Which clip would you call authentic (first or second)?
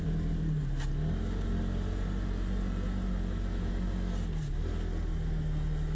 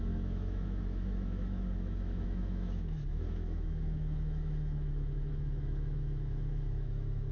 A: first